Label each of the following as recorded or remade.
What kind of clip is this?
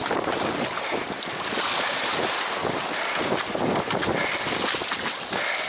recorded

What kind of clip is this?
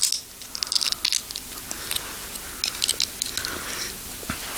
recorded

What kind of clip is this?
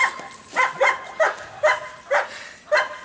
recorded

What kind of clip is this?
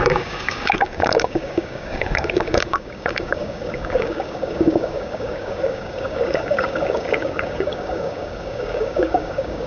remade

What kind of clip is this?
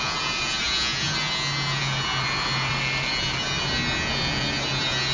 recorded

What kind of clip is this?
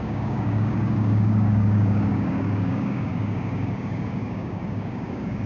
remade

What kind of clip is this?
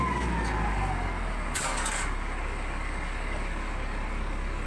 remade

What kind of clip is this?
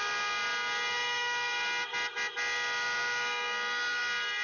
recorded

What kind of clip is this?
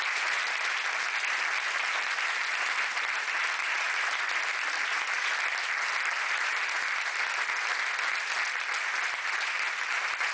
recorded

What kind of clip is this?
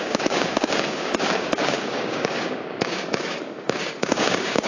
remade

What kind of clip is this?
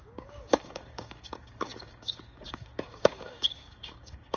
remade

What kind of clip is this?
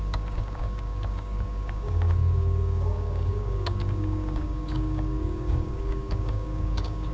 remade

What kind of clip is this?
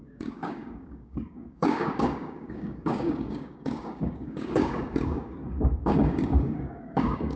remade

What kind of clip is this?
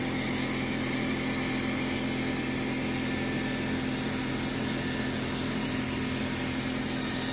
recorded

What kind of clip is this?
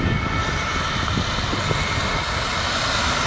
recorded